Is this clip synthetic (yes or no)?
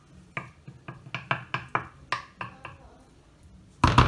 no